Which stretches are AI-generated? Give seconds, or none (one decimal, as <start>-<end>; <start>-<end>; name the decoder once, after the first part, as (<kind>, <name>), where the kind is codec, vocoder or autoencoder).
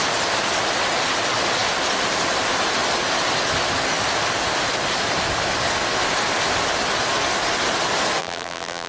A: 8.2-8.9 (vocoder, BigVGAN v2)